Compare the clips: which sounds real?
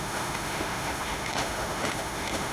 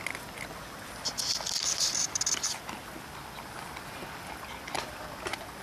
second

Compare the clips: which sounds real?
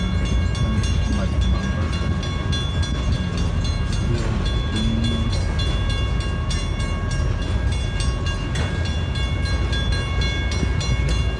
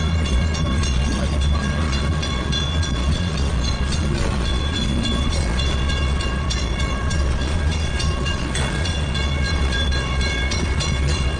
first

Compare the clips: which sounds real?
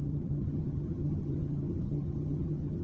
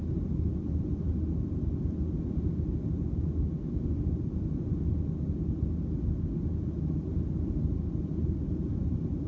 second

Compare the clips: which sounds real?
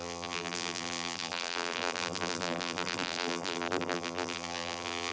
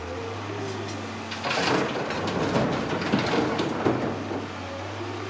second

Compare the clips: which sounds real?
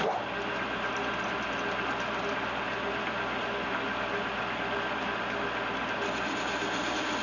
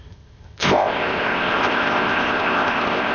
first